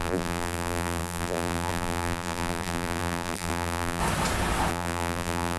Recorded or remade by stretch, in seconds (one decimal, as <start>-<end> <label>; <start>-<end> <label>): 0.0-4.0 remade; 4.0-4.7 recorded; 4.7-5.6 remade